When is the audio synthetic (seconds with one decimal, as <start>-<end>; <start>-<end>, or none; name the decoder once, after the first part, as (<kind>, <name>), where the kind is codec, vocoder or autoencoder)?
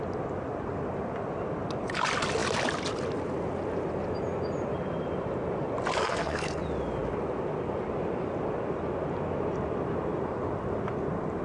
6.0-6.6 (codec, SNAC)